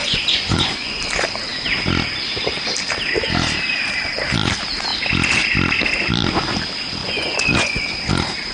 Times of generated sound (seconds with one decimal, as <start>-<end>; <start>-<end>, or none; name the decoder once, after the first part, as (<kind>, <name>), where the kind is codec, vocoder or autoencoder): 0.0-1.0 (vocoder, Vocos); 7.0-7.8